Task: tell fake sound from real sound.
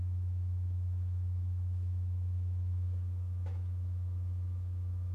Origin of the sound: fake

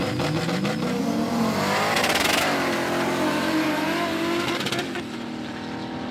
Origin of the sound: real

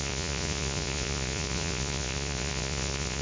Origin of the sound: fake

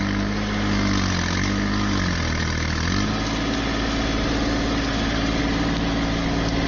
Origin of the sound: real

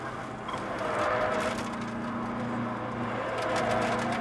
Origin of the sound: real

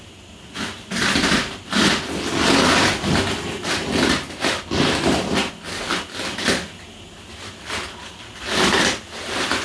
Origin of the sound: real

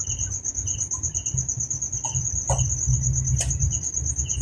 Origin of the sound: real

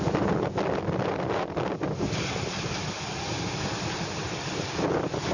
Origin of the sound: real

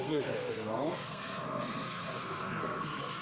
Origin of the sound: fake